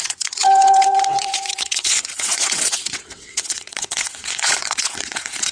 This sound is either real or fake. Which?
fake